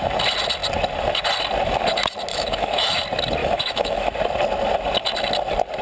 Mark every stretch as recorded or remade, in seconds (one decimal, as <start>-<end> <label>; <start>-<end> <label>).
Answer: 0.0-2.3 recorded; 2.3-3.0 remade; 3.0-3.4 recorded; 3.4-4.1 remade; 4.1-5.8 recorded